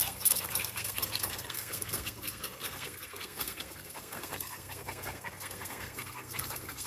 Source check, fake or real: fake